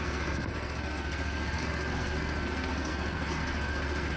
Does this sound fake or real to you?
fake